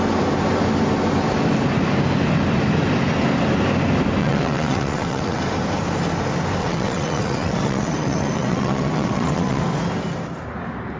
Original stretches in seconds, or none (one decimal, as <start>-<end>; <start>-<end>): 0.0-4.2; 5.4-6.6; 9.6-11.0